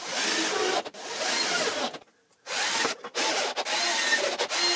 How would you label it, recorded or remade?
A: recorded